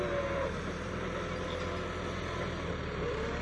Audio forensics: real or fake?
real